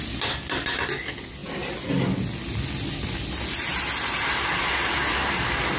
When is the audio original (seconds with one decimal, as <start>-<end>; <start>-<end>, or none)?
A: 0.0-5.8